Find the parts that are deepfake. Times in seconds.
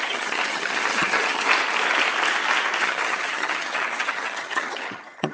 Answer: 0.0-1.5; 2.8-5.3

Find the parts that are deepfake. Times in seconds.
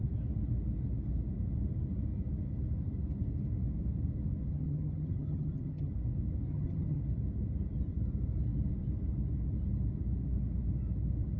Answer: 4.5-5.9; 6.5-7.0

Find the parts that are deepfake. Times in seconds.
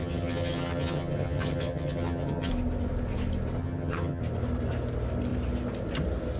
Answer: 0.0-2.5; 3.6-4.2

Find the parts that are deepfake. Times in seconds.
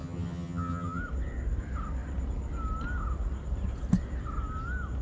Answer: 0.0-1.0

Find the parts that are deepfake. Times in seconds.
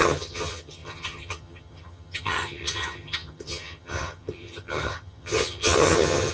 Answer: 0.0-6.3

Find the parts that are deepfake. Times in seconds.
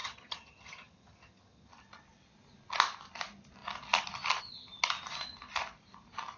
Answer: 0.0-1.7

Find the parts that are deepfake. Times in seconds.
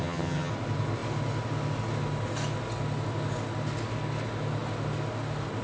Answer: 0.0-0.5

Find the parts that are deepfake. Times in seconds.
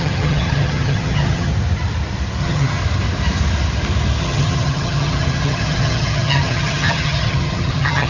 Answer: 0.0-1.5; 2.4-2.8; 4.2-8.1